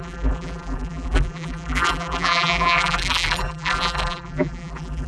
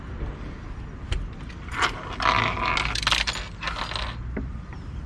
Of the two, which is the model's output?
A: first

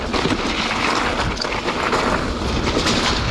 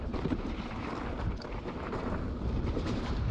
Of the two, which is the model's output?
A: second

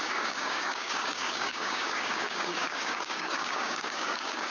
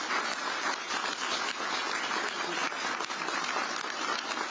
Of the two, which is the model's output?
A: first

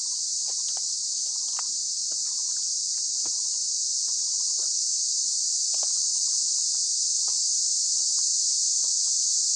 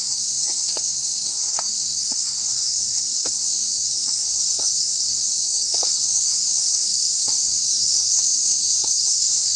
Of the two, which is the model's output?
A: second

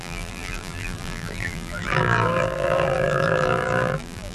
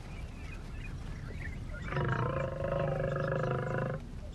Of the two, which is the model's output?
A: first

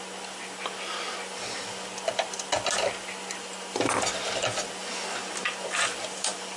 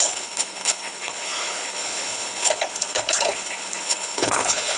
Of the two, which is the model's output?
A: second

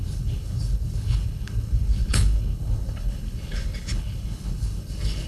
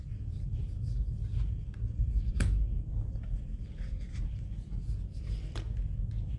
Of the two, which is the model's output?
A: first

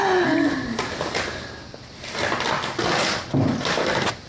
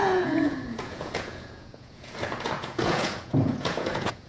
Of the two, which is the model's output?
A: second